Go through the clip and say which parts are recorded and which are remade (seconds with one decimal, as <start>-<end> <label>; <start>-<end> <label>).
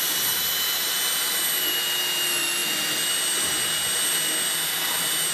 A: 0.0-5.3 recorded